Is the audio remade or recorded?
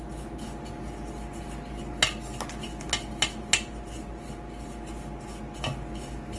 recorded